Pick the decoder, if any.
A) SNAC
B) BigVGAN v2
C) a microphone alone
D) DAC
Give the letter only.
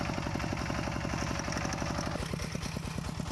C